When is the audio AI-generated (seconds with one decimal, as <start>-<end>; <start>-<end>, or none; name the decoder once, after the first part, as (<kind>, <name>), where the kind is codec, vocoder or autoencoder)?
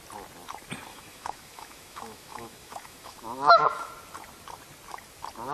0.9-3.9 (autoencoder, DAC-VAE)